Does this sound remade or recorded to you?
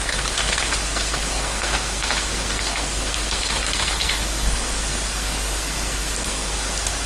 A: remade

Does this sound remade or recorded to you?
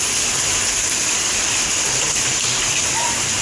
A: recorded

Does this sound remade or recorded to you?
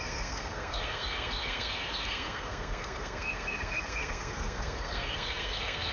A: remade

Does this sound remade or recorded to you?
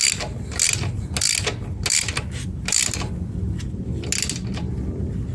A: recorded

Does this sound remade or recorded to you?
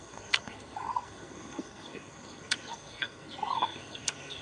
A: remade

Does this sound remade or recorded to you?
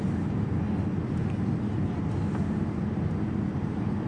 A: recorded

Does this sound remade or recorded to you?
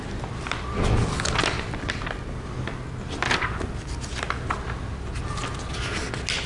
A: recorded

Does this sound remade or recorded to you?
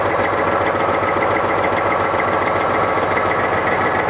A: recorded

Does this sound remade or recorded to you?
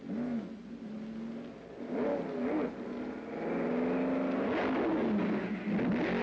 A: recorded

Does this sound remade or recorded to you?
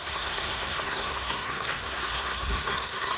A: remade